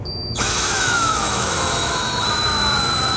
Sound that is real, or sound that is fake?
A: fake